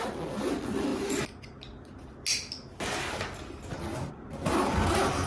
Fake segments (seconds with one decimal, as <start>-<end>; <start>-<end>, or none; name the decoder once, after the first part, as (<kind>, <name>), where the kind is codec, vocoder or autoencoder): none